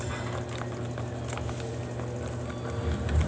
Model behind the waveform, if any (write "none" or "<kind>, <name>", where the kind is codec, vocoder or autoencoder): none